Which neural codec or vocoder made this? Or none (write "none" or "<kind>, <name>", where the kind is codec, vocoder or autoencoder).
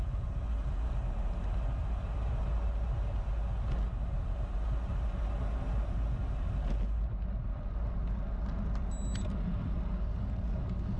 none